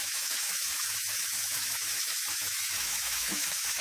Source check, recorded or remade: remade